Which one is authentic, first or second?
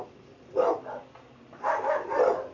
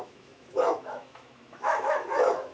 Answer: first